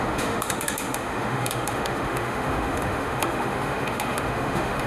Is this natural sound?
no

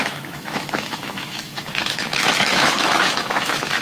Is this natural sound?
no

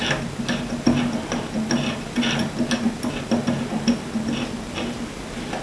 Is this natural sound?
yes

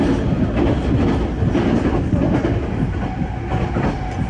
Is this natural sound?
yes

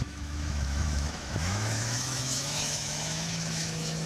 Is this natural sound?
no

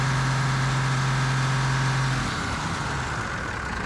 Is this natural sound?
yes